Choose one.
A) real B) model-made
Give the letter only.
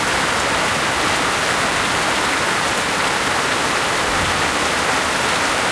A